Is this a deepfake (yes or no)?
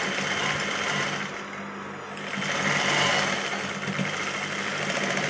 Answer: no